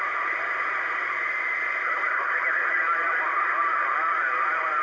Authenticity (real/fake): fake